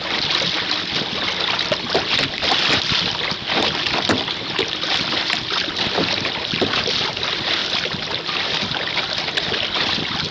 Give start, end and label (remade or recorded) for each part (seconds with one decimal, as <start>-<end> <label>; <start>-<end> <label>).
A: 0.0-7.6 recorded; 7.6-8.8 remade; 8.8-10.3 recorded